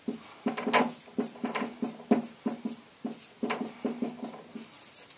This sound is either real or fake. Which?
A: real